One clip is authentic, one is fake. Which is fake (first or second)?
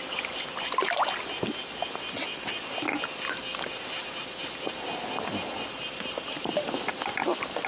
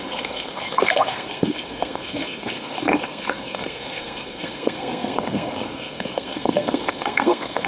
second